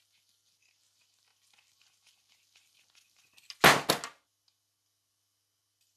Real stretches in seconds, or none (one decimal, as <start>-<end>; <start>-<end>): 0.0-6.0